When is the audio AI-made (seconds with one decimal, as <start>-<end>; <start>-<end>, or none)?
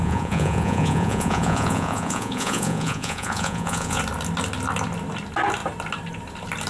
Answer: 0.0-4.0